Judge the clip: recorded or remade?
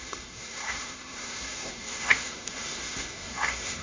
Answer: remade